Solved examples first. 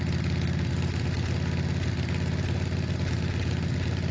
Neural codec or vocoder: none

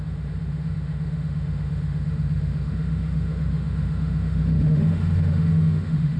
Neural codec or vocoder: autoencoder, DAC-VAE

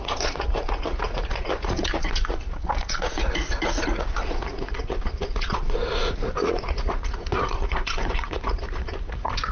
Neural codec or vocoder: vocoder, Vocos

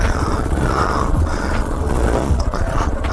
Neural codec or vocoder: vocoder, Vocos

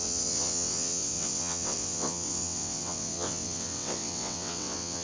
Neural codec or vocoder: vocoder, WaveNeXt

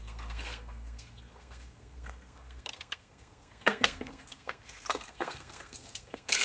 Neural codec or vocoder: codec, SNAC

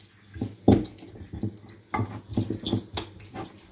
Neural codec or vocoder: none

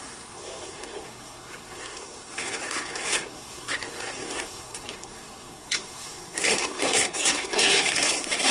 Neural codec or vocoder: codec, SNAC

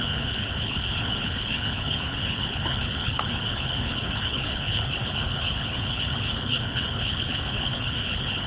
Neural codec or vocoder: codec, HILCodec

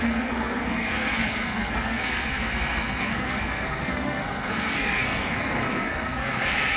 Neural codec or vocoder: codec, SNAC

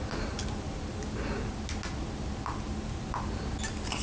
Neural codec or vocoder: none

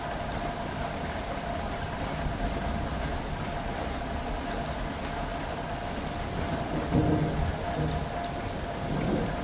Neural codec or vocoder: none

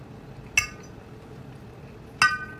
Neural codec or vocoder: none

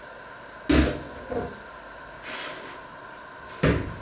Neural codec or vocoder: none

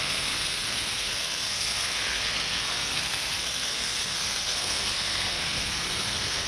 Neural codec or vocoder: codec, SNAC